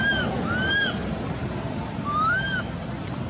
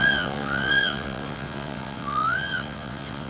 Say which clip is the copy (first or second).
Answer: second